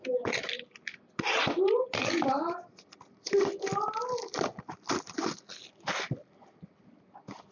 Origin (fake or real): real